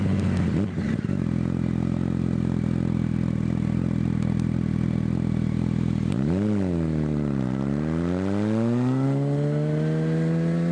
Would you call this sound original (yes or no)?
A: yes